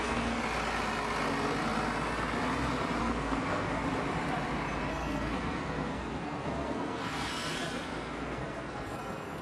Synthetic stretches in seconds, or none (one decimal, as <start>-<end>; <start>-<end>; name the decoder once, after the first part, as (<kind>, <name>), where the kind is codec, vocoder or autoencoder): 0.0-0.4 (codec, SNAC); 3.0-3.8; 4.9-9.4